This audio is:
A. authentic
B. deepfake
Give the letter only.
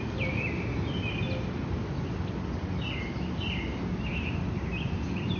A